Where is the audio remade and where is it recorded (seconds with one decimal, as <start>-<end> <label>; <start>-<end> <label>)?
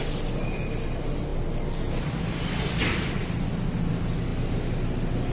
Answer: 0.0-5.3 recorded